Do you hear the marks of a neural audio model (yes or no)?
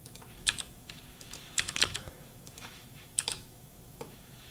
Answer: yes